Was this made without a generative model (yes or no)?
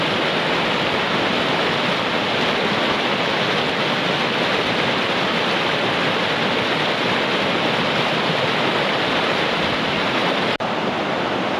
yes